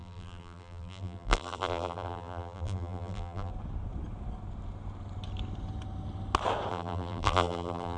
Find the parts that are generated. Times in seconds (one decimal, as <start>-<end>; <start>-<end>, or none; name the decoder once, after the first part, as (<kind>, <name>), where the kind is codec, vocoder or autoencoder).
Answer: 0.0-3.5 (vocoder, BigVGAN v2); 6.7-8.0